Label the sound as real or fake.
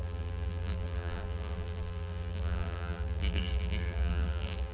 fake